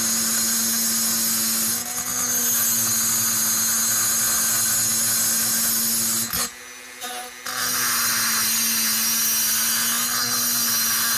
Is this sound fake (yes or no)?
no